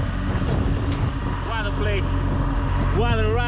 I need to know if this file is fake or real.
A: real